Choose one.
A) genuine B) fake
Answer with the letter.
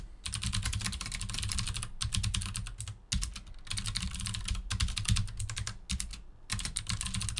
A